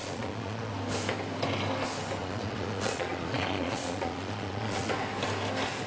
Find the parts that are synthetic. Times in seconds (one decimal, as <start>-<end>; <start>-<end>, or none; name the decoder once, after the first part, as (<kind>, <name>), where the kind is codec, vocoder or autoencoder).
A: 0.0-0.7 (vocoder, Vocos); 2.2-4.9